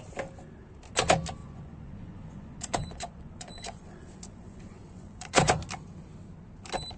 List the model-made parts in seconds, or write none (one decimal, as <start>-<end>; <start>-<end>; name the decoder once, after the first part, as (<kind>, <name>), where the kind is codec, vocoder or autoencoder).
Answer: 1.4-5.6 (vocoder, Vocos)